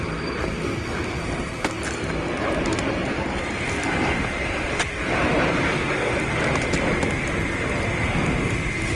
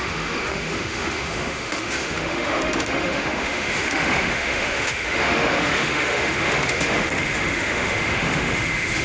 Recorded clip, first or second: first